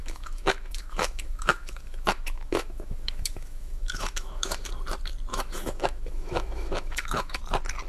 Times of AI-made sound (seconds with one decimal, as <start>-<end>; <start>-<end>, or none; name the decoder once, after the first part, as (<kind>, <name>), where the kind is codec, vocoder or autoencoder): 0.0-4.7 (autoencoder, DAC-VAE); 5.3-7.4